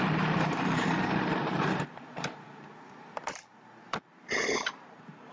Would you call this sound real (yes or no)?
no